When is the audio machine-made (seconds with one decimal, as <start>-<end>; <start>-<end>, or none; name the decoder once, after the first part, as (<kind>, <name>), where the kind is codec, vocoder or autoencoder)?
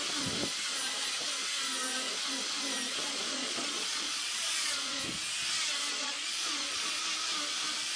3.1-5.0 (vocoder, Vocos); 5.9-7.0